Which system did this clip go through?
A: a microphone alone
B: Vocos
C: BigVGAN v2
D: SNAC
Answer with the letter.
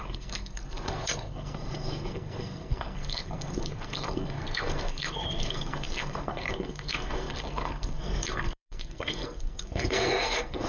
D